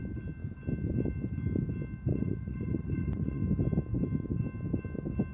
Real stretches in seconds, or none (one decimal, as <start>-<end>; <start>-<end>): 0.0-2.1; 3.4-5.3